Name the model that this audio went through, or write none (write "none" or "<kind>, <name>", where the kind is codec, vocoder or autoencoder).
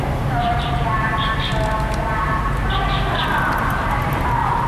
none